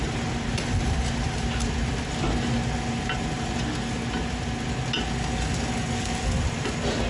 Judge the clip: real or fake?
real